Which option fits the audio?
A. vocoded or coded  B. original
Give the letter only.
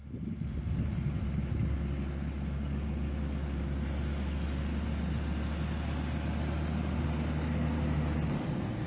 B